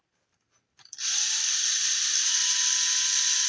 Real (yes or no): no